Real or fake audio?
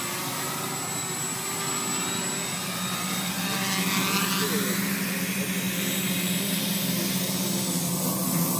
real